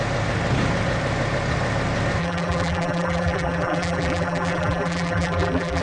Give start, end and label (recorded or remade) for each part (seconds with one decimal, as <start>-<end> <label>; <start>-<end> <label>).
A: 0.0-2.2 recorded; 2.2-5.8 remade